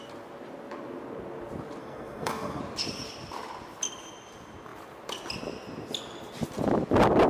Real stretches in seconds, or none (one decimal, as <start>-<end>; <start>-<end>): 0.0-1.8; 2.6-7.3